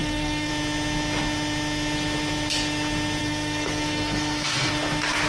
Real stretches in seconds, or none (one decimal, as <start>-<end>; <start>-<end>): 0.5-3.2; 4.7-5.3

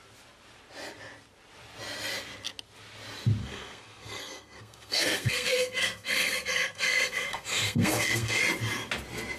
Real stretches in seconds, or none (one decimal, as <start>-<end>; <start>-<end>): 0.0-3.4; 8.4-9.4

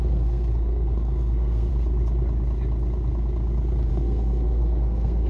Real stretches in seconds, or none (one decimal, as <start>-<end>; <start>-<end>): 1.7-3.9

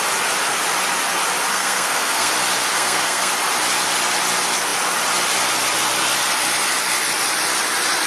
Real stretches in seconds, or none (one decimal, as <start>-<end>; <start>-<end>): 0.0-1.5; 2.3-2.7; 3.3-8.1

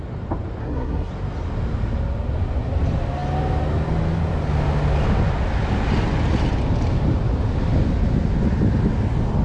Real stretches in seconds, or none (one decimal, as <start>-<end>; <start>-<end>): 0.0-0.6; 1.1-9.4

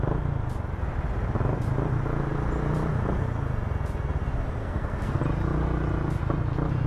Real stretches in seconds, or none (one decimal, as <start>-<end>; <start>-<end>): 0.0-4.6; 5.2-6.9

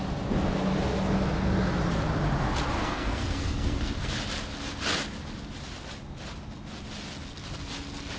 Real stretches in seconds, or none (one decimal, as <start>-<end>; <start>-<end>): 0.0-2.8; 4.1-8.2